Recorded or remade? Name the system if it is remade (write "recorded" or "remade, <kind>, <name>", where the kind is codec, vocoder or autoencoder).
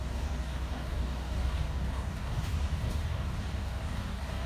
remade, codec, DAC